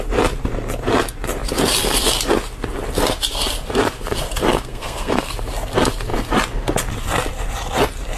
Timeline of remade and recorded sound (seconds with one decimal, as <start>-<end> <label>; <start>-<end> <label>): 0.0-4.5 recorded; 4.5-5.3 remade; 5.3-8.2 recorded